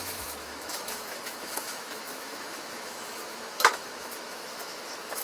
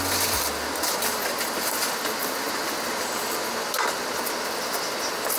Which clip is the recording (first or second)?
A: second